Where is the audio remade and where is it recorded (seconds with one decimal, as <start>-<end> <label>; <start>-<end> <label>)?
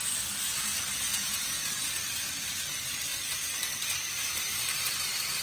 0.0-1.1 recorded; 1.1-1.7 remade; 1.7-5.4 recorded